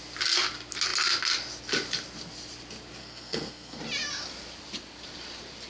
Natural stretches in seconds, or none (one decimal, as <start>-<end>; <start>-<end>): 0.0-3.0; 3.8-5.7